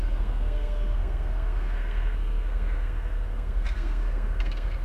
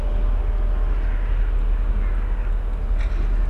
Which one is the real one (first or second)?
second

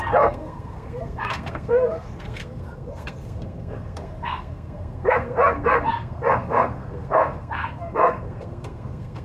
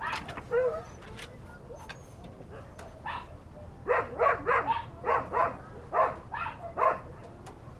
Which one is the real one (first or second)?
second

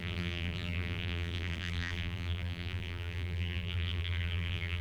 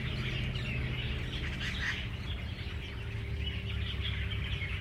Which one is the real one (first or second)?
second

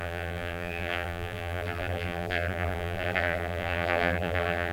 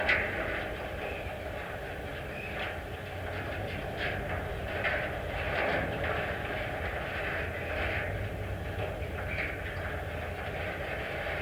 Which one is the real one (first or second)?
second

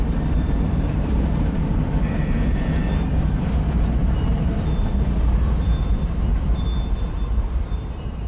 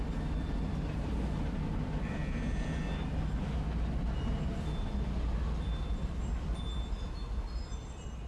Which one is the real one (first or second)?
second